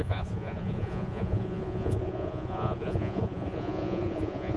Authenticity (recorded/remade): remade